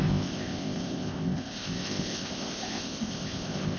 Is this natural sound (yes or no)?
no